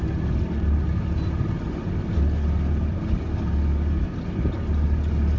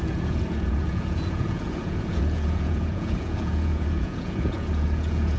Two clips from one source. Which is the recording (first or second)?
first